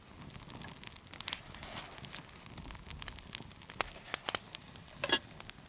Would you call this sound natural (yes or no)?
yes